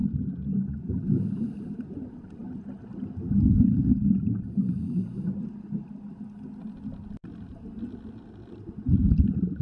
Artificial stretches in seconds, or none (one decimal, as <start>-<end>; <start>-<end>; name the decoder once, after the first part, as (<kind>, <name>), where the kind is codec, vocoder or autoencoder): none